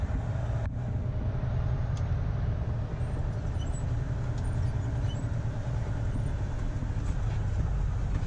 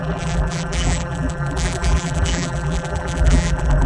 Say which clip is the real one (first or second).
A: first